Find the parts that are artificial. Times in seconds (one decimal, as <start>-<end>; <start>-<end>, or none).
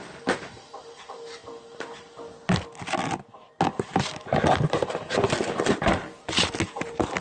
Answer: none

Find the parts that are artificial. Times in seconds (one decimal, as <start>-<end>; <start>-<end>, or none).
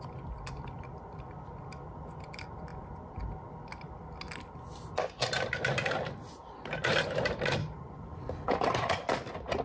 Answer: 7.6-8.3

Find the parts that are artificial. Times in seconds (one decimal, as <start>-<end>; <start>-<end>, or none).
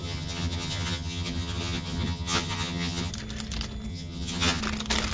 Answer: 0.0-3.1; 3.9-4.6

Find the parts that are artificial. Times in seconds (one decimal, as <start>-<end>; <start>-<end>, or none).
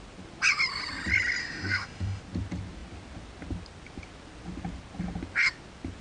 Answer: 1.4-2.2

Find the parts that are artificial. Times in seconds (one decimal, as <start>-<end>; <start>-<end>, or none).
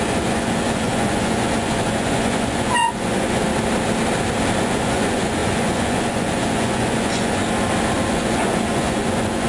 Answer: 0.0-3.5; 4.6-7.4; 8.1-9.5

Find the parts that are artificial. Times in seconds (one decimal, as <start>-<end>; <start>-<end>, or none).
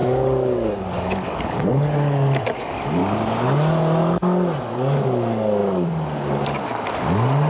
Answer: 0.0-3.0; 4.6-7.5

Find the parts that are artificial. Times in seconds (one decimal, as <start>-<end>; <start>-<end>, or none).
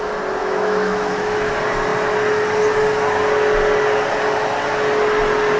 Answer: 0.4-1.5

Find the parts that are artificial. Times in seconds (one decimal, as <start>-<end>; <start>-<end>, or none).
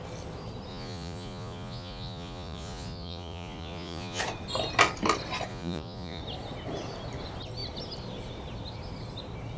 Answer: 0.7-4.2; 5.5-6.2